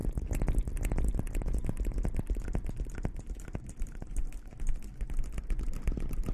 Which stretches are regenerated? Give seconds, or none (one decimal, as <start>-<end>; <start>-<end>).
3.8-4.2; 5.4-6.3